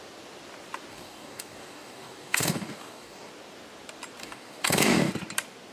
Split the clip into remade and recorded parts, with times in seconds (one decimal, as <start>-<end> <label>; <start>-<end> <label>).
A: 0.0-0.9 recorded; 0.9-3.3 remade; 3.3-4.2 recorded; 4.2-5.1 remade; 5.1-5.7 recorded